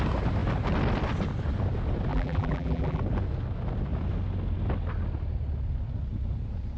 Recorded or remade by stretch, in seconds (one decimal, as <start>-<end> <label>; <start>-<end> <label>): 0.0-2.1 recorded; 2.1-3.0 remade; 3.0-6.8 recorded